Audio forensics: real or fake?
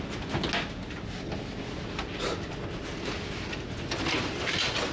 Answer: real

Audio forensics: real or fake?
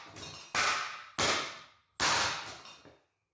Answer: real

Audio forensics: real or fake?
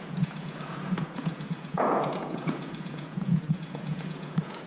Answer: fake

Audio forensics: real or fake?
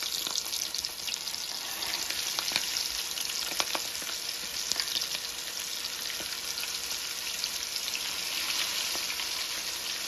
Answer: real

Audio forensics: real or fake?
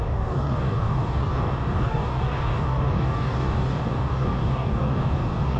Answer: fake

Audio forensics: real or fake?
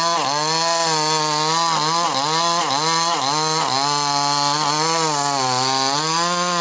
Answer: real